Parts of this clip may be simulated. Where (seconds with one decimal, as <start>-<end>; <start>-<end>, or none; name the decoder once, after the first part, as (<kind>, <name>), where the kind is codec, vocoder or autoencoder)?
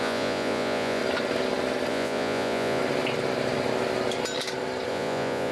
0.0-1.0 (vocoder, Vocos); 1.9-2.8; 4.9-5.5